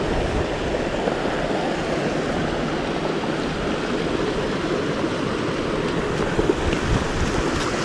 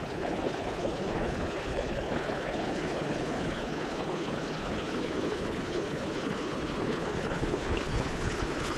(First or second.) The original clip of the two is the first